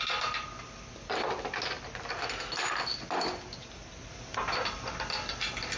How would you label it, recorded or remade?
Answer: recorded